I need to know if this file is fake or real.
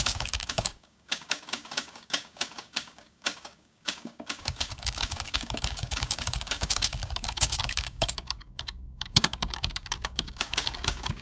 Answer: fake